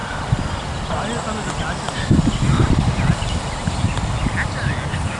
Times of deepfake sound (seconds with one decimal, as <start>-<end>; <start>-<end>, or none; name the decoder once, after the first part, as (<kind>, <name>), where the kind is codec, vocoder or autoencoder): none